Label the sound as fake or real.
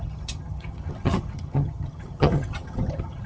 fake